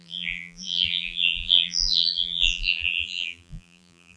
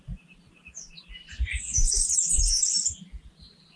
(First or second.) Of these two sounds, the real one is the second